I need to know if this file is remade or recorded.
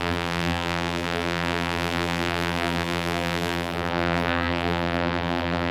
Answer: remade